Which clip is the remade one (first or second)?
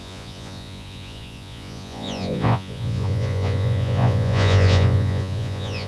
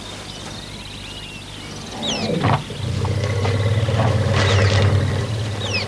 first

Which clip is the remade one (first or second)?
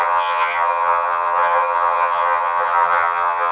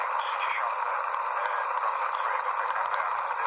first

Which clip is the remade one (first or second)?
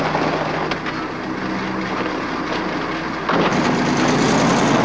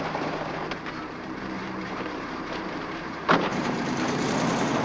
second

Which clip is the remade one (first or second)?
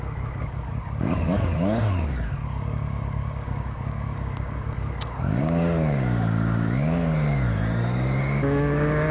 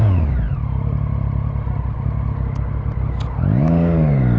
first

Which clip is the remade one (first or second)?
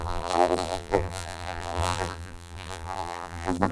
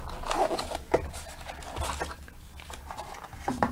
first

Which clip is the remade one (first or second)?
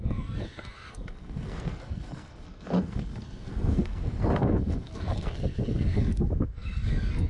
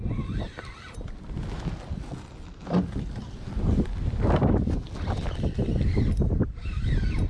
first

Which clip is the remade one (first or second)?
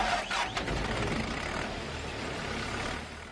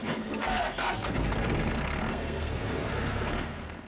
second